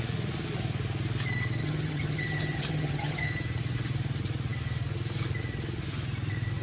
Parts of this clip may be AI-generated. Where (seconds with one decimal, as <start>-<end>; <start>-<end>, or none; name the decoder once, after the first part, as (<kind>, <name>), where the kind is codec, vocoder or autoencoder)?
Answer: 1.6-3.3 (vocoder, HiFi-GAN)